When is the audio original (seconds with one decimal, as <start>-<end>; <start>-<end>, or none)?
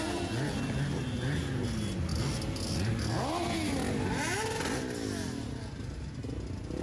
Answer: 0.0-6.8